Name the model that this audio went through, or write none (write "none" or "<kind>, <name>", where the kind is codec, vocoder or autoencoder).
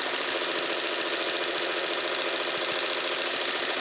none